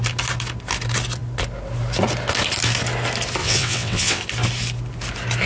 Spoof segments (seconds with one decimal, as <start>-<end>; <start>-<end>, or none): 3.4-4.2